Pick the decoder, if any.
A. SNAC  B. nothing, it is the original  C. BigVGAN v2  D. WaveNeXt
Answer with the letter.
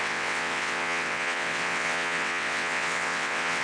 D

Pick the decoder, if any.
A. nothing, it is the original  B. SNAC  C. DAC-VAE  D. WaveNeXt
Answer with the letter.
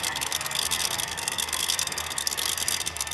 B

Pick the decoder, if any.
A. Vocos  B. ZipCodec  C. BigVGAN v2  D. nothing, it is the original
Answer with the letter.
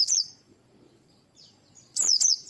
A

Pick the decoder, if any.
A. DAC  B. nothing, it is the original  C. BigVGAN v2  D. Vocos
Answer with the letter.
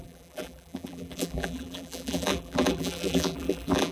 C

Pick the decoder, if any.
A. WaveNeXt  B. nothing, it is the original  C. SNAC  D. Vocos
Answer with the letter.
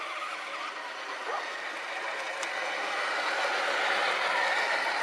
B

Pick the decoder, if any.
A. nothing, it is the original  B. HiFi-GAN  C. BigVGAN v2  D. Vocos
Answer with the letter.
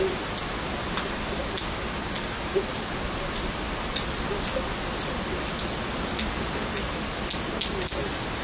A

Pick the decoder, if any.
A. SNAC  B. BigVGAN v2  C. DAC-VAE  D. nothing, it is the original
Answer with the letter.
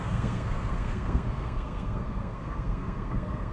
A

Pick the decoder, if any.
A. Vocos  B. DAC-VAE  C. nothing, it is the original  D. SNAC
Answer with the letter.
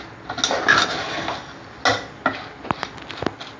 C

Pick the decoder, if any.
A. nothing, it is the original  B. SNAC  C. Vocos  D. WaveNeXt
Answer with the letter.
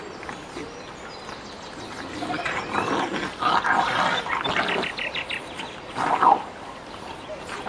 A